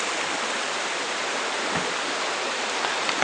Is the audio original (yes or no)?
yes